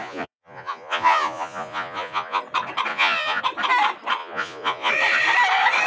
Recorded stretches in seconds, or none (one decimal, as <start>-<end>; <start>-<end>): 2.4-2.9; 3.4-4.2; 4.9-5.9